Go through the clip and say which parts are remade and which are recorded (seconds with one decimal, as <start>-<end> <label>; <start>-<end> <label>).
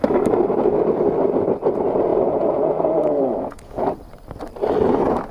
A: 0.0-2.1 recorded; 2.1-3.9 remade; 3.9-5.3 recorded